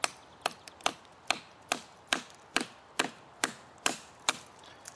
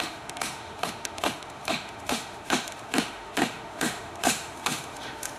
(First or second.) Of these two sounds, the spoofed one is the second